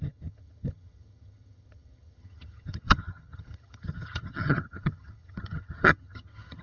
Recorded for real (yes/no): no